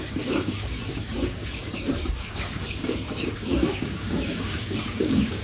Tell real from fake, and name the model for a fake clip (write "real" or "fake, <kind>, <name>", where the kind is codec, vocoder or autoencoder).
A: fake, codec, DAC